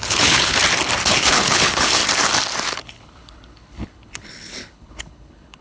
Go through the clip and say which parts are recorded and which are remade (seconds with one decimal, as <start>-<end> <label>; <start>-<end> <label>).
0.0-0.6 remade; 0.6-1.1 recorded; 1.1-2.0 remade; 2.0-2.7 recorded; 2.7-5.6 remade